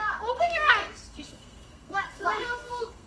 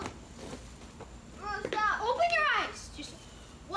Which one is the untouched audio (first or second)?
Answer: second